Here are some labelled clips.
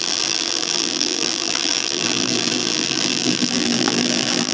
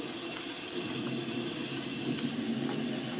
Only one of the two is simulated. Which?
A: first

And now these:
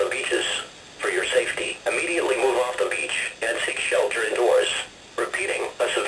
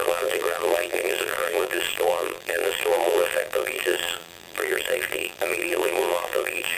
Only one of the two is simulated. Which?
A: second